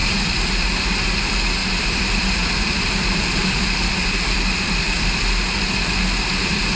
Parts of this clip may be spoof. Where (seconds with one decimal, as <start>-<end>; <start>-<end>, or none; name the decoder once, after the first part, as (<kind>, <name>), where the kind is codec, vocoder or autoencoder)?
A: 0.0-0.8 (vocoder, BigVGAN v2); 1.6-5.7